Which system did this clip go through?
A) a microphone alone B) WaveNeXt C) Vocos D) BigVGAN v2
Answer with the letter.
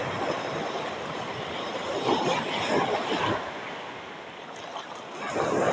A